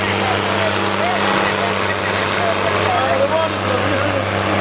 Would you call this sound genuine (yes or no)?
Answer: yes